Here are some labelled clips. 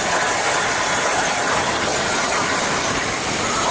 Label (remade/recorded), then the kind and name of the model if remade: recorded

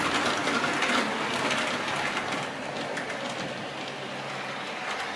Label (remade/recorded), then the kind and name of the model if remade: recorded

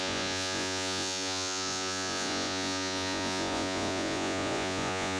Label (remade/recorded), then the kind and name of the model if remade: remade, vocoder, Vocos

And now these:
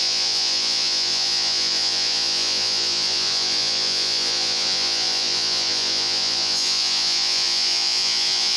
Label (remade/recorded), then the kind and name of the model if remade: remade, vocoder, Vocos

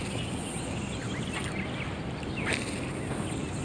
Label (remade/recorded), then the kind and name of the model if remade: recorded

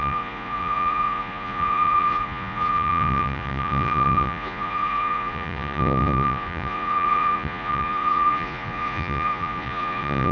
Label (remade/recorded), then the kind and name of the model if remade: remade, vocoder, Vocos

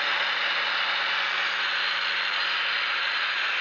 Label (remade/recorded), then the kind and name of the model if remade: recorded